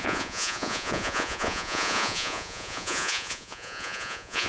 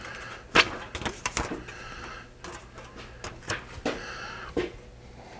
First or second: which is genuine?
second